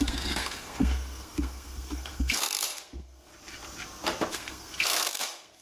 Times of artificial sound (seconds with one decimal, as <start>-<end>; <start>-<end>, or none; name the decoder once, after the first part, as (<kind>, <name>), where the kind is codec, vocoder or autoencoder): 0.0-3.3 (codec, SNAC); 4.3-5.6